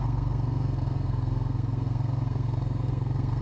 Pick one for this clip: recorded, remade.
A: remade